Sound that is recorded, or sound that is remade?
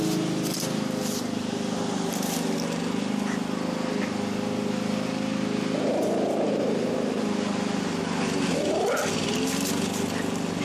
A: recorded